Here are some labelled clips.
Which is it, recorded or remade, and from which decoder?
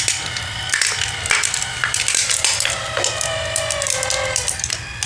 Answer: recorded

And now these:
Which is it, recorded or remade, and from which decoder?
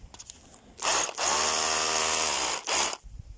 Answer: recorded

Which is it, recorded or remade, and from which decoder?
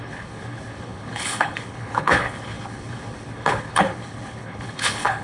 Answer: remade, codec, HILCodec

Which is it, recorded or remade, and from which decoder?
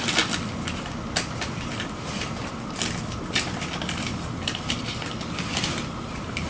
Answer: recorded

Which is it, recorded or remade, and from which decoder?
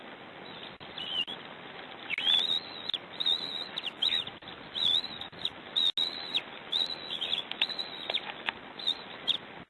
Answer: recorded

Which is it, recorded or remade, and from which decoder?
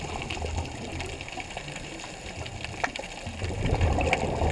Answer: recorded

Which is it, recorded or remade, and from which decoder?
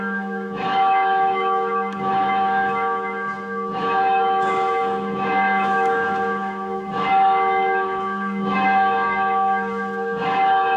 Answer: remade, autoencoder, DAC-VAE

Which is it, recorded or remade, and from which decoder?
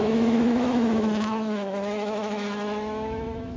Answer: remade, autoencoder, DAC-VAE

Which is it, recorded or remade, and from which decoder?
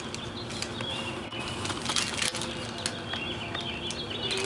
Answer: recorded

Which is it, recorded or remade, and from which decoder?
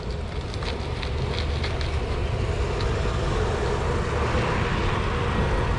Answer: recorded